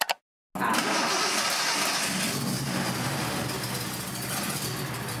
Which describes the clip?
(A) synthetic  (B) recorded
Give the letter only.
B